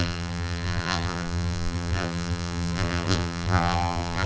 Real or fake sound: fake